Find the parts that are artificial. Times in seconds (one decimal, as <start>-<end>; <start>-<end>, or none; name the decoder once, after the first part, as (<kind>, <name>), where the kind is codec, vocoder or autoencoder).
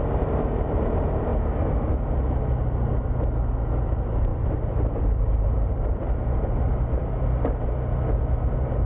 0.0-1.3 (vocoder, BigVGAN v2); 3.8-8.9